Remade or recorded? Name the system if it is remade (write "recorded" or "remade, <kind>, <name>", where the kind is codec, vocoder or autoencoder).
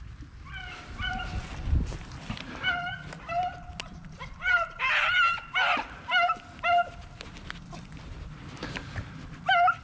recorded